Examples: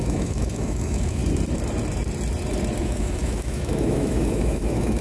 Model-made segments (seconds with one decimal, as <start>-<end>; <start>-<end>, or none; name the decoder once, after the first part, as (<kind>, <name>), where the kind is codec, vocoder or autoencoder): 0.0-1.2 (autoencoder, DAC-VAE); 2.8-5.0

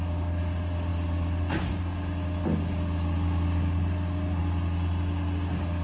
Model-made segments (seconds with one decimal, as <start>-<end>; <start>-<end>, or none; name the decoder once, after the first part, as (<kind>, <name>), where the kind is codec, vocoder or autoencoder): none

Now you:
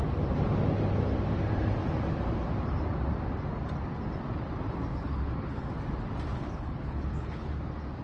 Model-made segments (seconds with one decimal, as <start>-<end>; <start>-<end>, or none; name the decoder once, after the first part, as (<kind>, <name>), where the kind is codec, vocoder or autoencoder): 4.9-5.7 (codec, HILCodec); 6.3-7.5

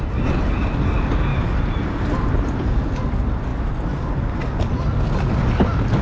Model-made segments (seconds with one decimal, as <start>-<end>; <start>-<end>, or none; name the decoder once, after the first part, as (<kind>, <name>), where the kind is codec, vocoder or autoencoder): 1.3-2.1 (vocoder, BigVGAN v2); 3.5-4.1

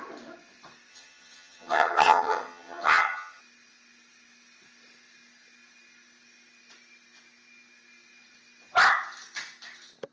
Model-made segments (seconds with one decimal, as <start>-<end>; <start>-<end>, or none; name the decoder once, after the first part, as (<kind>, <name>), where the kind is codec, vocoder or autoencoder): 0.9-3.4 (vocoder, HiFi-GAN)

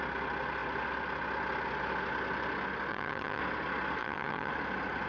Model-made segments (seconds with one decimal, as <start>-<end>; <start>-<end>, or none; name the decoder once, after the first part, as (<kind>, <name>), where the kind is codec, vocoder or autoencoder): 2.9-3.4 (vocoder, HiFi-GAN); 4.0-4.5